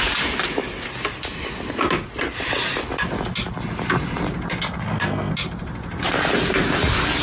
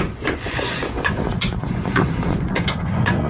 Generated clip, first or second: second